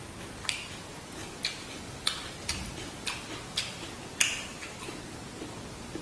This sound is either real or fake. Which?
real